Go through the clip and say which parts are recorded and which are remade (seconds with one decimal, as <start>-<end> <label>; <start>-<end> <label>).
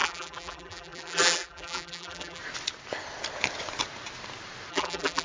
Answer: 0.0-2.4 remade; 2.4-4.7 recorded; 4.7-5.2 remade